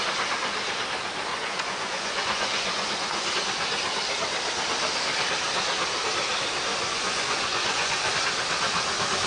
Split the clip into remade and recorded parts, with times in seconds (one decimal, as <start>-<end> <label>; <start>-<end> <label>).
0.0-1.3 recorded; 1.3-3.3 remade; 3.3-6.7 recorded; 6.7-8.2 remade; 8.2-9.3 recorded